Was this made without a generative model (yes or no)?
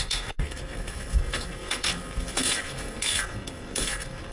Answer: no